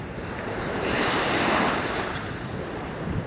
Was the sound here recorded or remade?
remade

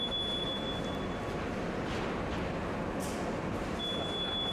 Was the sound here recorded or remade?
recorded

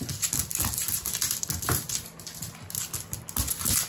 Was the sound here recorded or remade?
recorded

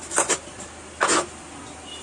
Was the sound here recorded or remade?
recorded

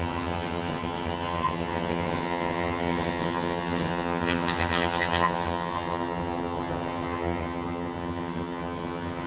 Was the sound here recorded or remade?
remade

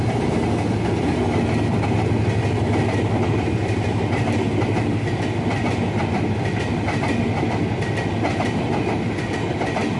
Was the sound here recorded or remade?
recorded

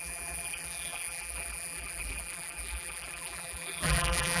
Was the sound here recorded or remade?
remade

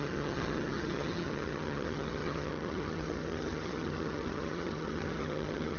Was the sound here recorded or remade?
remade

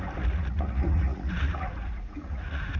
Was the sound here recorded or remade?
remade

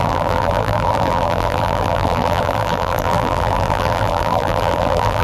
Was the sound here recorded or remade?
remade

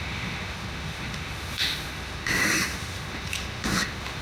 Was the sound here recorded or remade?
remade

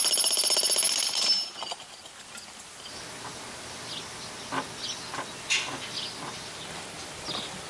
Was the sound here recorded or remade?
recorded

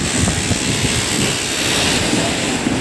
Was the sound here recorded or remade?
recorded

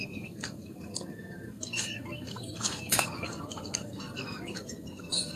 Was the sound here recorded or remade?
remade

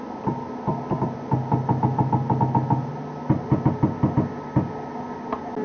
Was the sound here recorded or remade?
recorded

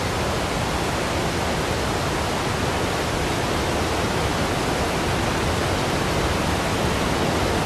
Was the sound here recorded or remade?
recorded